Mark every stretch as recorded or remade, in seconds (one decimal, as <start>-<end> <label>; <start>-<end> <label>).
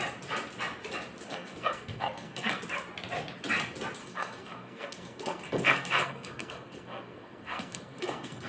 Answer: 0.0-1.3 recorded; 1.3-2.6 remade; 2.6-4.0 recorded; 4.0-8.5 remade